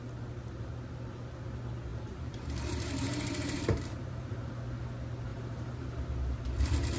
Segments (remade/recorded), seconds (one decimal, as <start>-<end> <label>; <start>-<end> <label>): 0.0-1.9 recorded; 1.9-4.5 remade; 4.5-5.3 recorded; 5.3-6.0 remade; 6.0-7.0 recorded

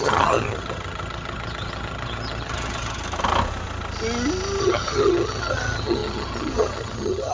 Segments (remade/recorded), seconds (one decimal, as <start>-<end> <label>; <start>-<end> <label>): 0.0-3.0 remade; 3.0-4.6 recorded; 4.6-7.3 remade

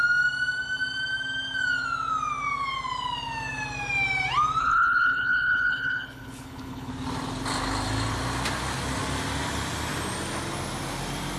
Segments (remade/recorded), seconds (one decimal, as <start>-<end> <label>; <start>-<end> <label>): 0.0-4.6 recorded; 4.6-6.9 remade; 6.9-11.4 recorded

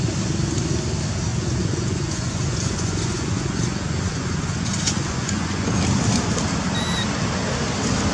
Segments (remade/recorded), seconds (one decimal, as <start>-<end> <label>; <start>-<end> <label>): 0.0-1.3 recorded; 1.3-5.7 remade; 5.7-8.1 recorded